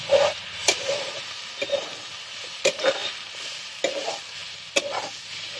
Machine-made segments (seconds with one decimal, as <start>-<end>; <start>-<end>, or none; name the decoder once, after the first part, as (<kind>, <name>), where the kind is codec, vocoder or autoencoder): none